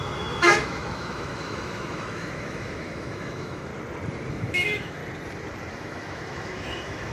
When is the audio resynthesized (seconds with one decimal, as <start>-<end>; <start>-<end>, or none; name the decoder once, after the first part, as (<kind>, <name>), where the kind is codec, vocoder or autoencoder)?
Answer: 0.0-3.7 (autoencoder, DAC-VAE); 4.3-5.0; 5.7-7.1